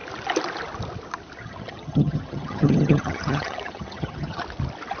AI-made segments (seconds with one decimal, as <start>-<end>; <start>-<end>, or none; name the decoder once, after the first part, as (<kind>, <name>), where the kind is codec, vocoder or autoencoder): 1.4-4.4 (vocoder, HiFi-GAN)